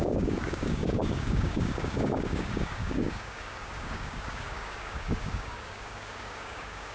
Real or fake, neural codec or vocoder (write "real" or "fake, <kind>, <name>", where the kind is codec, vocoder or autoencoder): fake, codec, DAC